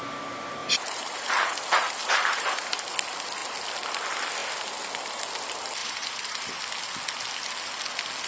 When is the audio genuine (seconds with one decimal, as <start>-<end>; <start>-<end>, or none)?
0.0-0.6; 2.8-5.8; 6.6-8.3